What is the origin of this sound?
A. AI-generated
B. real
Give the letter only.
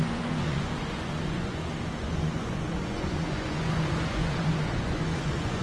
A